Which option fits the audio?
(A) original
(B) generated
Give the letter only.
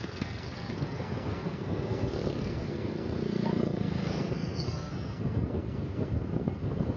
B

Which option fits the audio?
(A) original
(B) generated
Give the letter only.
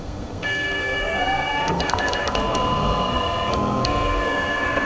B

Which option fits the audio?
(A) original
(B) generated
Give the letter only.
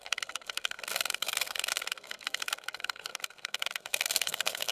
B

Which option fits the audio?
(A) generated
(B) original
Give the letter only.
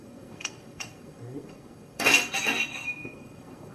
A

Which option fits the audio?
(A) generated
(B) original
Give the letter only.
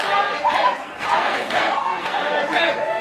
A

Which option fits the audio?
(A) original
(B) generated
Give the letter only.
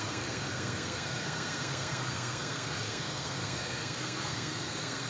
B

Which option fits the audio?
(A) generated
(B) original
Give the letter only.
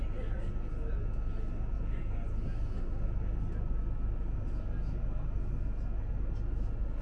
B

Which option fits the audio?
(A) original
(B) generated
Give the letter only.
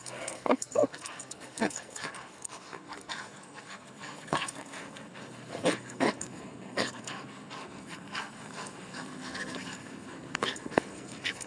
B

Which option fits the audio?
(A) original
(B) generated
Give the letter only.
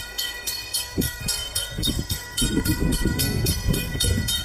B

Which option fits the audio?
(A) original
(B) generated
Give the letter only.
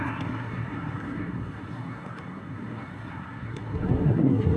B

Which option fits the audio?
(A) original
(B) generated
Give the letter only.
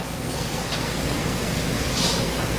B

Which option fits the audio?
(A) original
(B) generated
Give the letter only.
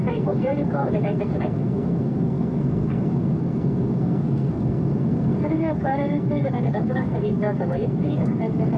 B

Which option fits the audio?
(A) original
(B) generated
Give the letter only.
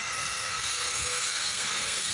B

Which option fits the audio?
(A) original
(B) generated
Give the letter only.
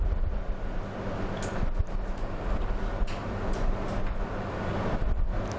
A